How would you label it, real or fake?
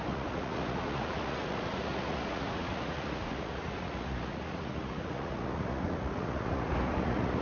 fake